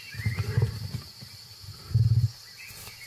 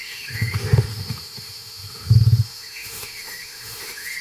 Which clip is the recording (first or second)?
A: first